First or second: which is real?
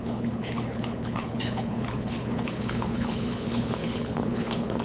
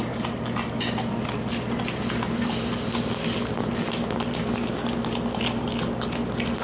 second